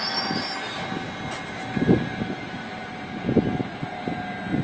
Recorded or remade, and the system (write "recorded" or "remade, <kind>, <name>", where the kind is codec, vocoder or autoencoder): recorded